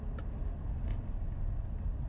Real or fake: real